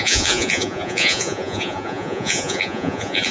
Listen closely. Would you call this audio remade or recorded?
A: remade